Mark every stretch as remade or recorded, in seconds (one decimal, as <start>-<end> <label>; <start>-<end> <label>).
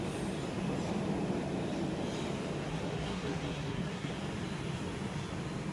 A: 0.0-2.7 recorded; 2.7-4.1 remade; 4.1-5.7 recorded